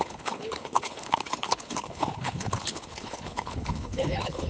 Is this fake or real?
fake